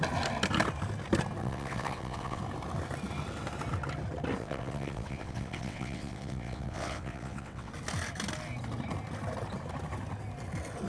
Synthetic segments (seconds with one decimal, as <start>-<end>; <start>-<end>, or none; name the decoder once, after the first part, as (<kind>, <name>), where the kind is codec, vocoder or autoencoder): 1.4-2.4 (vocoder, WaveNeXt); 4.4-7.7